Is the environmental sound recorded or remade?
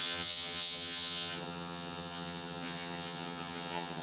remade